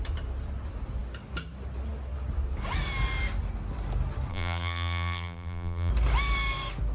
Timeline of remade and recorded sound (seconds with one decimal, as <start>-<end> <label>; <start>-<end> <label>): 0.0-4.3 recorded; 4.3-5.9 remade; 5.9-6.9 recorded

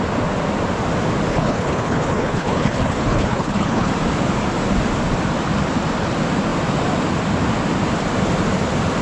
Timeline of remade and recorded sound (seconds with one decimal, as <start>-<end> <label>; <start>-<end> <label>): 0.0-1.3 recorded; 1.3-3.9 remade; 3.9-9.0 recorded

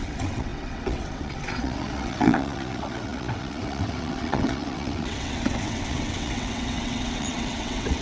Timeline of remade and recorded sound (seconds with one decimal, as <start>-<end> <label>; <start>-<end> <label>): 0.0-8.0 remade